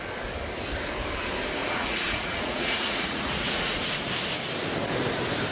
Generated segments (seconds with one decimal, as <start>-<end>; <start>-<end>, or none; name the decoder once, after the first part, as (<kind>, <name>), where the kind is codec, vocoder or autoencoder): 1.6-4.0 (vocoder, Vocos)